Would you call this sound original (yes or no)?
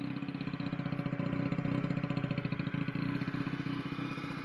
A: yes